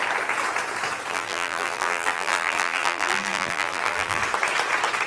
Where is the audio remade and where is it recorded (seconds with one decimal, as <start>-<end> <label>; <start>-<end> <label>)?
0.0-1.1 recorded; 1.1-4.2 remade; 4.2-5.1 recorded